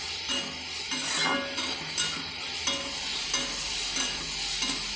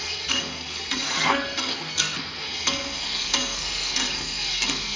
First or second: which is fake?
second